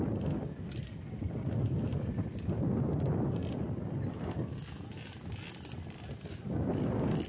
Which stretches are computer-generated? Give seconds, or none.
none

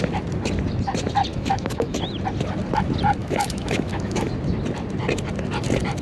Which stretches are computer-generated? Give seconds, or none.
1.3-2.0 (autoencoder, DAC-VAE); 3.2-4.3

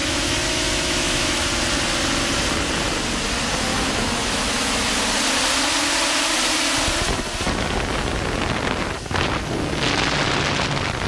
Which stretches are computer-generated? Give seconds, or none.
0.0-1.5 (autoencoder, DAC-VAE); 3.7-4.9

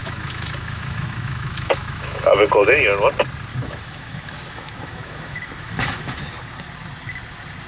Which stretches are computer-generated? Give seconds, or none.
0.0-2.5 (autoencoder, DAC-VAE); 3.5-6.3

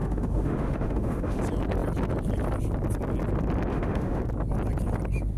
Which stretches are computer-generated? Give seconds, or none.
0.0-1.4 (autoencoder, DAC-VAE); 3.7-4.2

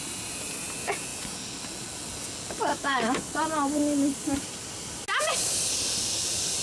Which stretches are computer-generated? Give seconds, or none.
2.7-3.2 (autoencoder, DAC-VAE)

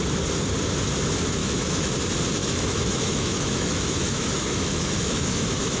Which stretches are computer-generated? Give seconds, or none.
1.4-1.9 (autoencoder, DAC-VAE); 2.4-5.8

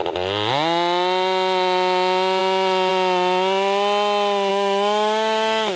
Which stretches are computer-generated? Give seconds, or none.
4.5-5.8 (autoencoder, DAC-VAE)